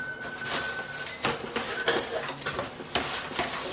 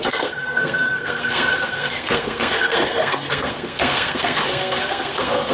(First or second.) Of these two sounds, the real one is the first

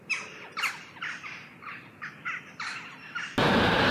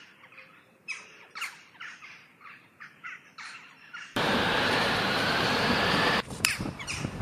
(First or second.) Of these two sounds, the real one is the first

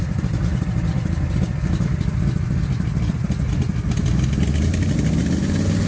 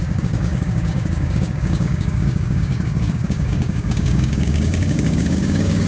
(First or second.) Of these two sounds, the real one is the first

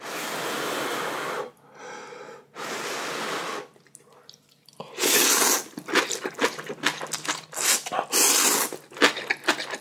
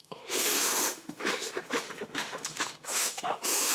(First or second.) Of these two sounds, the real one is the first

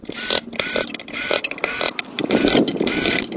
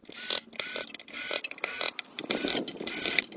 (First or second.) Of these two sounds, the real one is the second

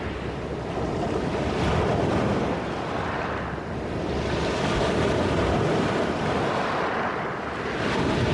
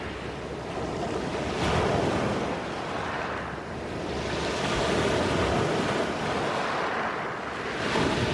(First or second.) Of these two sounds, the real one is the second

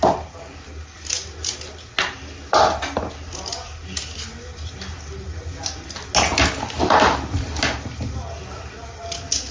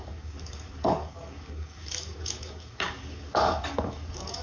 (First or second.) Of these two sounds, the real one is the first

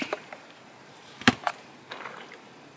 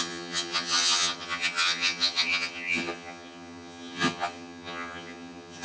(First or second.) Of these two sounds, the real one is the first